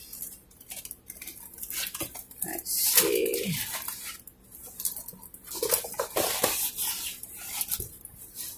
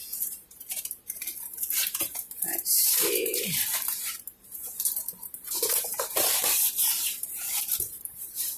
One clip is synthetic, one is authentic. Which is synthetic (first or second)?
second